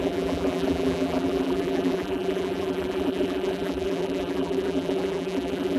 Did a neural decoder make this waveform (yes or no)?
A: yes